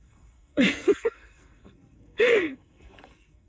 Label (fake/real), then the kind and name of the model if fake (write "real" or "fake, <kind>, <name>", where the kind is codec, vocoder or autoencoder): fake, codec, SNAC